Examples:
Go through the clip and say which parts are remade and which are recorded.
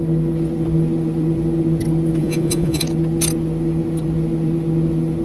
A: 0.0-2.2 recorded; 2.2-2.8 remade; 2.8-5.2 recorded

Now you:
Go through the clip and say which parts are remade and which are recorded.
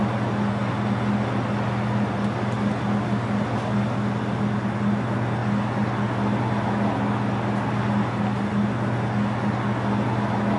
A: 0.0-10.6 recorded